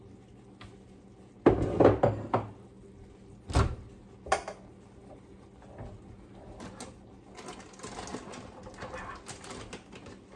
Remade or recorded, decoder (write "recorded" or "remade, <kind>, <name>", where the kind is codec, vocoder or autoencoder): recorded